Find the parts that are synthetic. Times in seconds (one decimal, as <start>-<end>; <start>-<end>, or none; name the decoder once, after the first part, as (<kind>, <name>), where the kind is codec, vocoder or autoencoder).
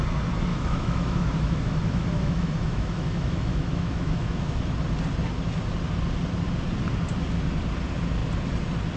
0.5-4.6 (autoencoder, DAC-VAE)